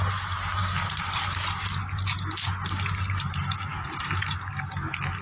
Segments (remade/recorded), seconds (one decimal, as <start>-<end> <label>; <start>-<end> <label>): 0.0-5.2 recorded